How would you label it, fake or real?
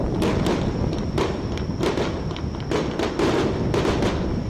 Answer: real